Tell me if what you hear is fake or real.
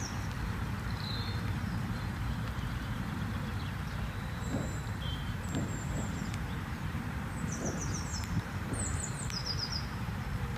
fake